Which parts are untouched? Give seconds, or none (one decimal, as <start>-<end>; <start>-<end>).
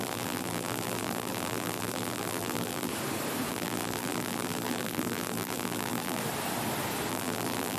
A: 2.9-3.5; 6.2-7.1